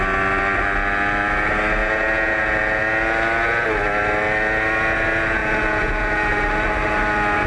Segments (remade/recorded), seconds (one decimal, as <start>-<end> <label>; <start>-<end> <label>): 0.0-1.8 recorded; 1.8-2.8 remade; 2.8-5.4 recorded; 5.4-6.3 remade; 6.3-7.5 recorded